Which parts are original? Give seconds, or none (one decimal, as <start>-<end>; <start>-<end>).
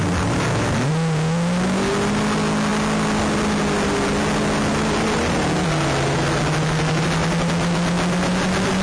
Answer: 0.0-8.8